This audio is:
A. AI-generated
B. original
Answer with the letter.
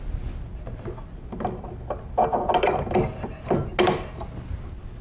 B